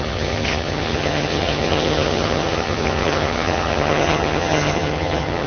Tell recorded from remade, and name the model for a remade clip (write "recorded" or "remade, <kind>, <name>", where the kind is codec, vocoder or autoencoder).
remade, vocoder, HiFi-GAN